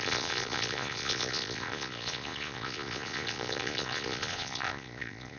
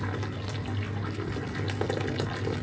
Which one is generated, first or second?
first